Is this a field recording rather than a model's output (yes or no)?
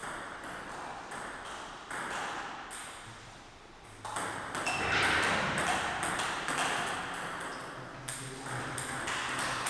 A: yes